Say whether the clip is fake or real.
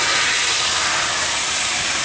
real